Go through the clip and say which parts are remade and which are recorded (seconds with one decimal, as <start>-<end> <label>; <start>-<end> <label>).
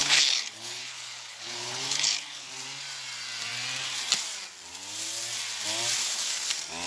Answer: 0.0-2.5 remade; 2.5-6.0 recorded; 6.0-6.5 remade; 6.5-6.9 recorded